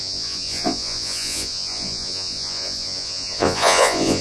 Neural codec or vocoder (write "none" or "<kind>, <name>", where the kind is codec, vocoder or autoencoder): vocoder, Vocos